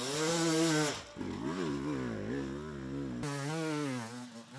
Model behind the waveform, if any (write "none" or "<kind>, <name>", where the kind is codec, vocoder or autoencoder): none